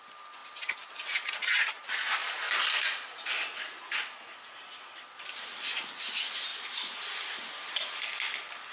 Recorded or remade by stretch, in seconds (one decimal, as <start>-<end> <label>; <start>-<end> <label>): 0.0-8.7 recorded